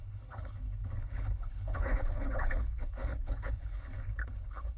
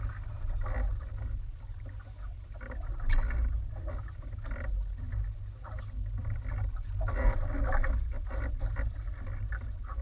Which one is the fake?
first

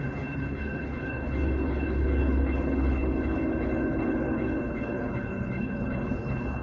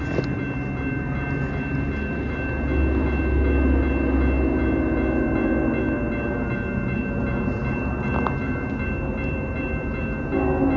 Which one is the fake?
first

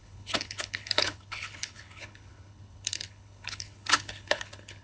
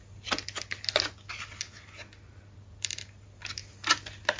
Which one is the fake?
first